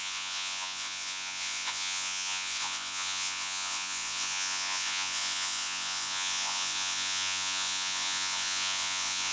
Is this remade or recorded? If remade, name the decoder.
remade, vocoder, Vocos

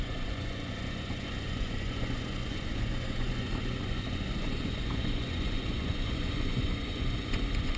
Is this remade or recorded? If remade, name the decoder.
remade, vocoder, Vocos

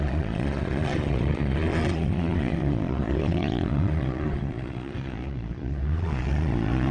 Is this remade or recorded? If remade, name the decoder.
remade, vocoder, Vocos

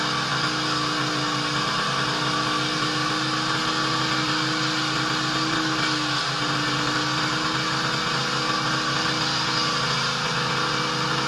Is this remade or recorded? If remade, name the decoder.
recorded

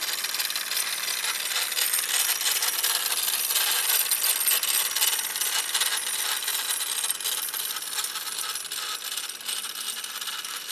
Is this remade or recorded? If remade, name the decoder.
recorded